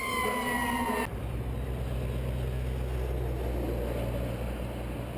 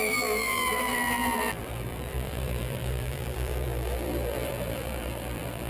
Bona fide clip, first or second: first